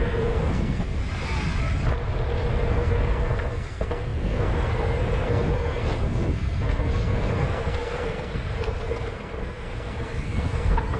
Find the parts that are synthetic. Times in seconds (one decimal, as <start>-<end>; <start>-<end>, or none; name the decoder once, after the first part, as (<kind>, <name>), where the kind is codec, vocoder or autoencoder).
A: 0.0-1.0 (codec, SNAC); 2.5-11.0